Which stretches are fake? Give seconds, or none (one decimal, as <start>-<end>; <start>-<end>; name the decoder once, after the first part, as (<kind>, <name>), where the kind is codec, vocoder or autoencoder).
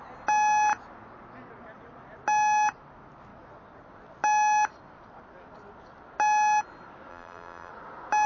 7.1-7.7 (vocoder, BigVGAN v2)